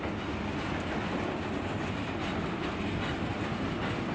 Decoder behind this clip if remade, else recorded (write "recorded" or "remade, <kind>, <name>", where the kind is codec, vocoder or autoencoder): recorded